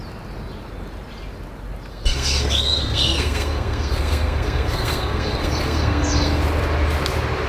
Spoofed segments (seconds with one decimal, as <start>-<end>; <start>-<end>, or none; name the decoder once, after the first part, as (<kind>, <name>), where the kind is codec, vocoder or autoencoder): 1.9-6.4 (codec, SNAC)